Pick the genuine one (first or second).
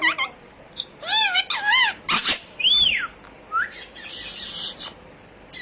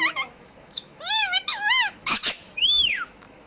first